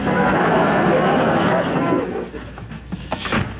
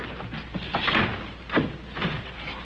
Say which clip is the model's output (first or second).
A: first